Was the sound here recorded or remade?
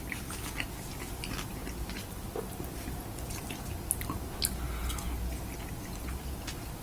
recorded